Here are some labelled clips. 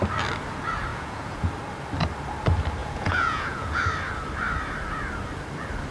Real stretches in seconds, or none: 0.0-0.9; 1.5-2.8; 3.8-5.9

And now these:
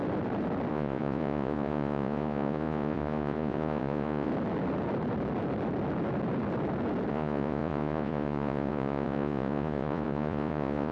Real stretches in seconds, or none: 0.0-0.7; 4.3-7.1

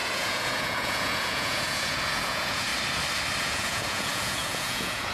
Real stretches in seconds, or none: 2.7-3.4

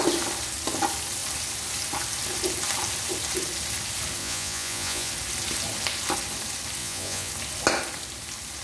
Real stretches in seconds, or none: 0.0-4.2; 5.1-6.8; 7.3-8.6

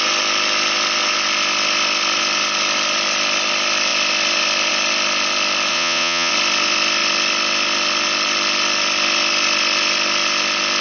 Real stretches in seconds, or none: 0.0-5.7; 6.3-10.8

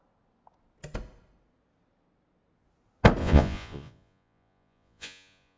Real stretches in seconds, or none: 0.0-3.2

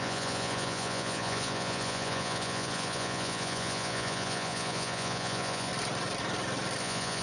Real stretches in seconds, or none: 5.7-6.8